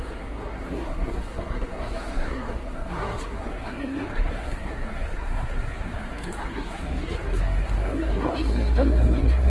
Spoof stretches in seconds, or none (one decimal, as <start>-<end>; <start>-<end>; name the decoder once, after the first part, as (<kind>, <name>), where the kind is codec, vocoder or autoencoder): 0.0-9.5 (codec, SNAC)